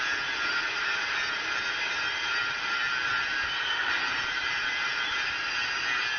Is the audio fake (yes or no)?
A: yes